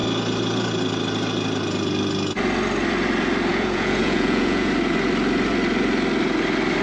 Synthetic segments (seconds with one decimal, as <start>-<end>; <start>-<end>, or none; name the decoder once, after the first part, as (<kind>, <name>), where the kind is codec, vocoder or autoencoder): 3.5-4.7 (vocoder, Vocos)